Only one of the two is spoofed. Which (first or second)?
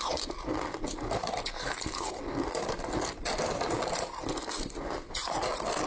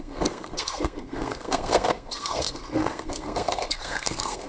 second